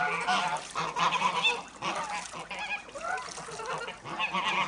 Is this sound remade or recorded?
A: recorded